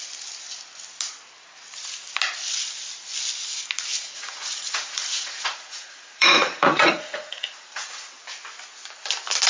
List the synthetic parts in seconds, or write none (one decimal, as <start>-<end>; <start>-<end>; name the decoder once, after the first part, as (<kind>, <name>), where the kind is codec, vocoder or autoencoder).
3.9-8.1 (vocoder, Vocos)